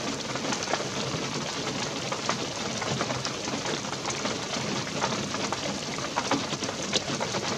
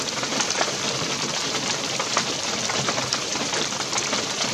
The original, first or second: first